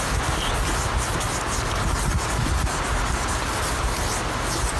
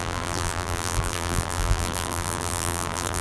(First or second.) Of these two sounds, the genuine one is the first